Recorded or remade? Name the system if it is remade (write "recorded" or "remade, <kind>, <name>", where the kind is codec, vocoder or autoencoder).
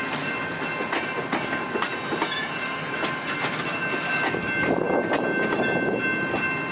recorded